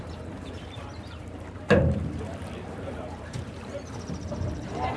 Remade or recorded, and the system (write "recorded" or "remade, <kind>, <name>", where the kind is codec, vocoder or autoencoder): remade, vocoder, BigVGAN v2